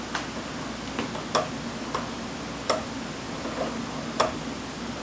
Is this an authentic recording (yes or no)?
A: yes